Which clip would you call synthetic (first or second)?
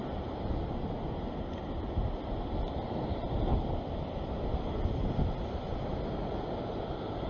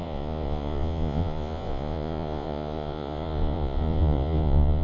second